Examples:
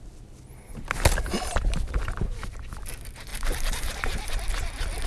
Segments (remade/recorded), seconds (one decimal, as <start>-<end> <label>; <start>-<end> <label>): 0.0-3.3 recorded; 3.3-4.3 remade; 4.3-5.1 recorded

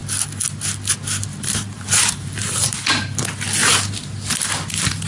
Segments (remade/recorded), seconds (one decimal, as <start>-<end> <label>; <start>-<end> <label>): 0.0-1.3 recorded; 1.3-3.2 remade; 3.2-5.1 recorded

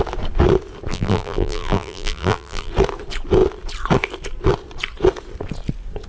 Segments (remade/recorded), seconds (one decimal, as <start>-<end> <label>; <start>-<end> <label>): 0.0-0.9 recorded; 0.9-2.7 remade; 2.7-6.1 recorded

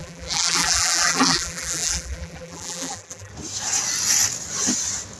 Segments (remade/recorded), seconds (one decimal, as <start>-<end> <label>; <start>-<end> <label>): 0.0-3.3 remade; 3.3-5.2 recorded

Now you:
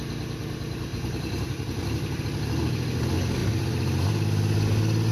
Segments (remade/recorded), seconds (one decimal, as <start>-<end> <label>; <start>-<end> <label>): 0.0-0.9 recorded; 0.9-2.2 remade; 2.2-3.4 recorded; 3.4-4.1 remade; 4.1-5.1 recorded